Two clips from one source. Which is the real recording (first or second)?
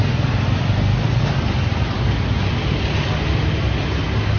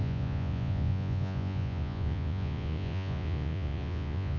first